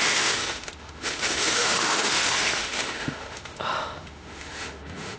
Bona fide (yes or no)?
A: no